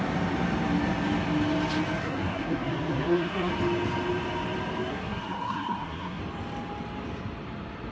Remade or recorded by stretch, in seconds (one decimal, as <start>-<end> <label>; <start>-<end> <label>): 0.0-2.0 recorded; 2.0-3.5 remade; 3.5-4.9 recorded; 4.9-6.2 remade; 6.2-7.9 recorded